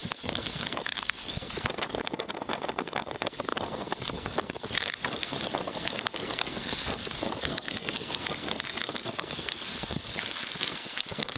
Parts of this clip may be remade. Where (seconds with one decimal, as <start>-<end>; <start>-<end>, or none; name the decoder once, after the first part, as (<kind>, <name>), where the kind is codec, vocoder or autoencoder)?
0.0-11.4 (codec, SNAC)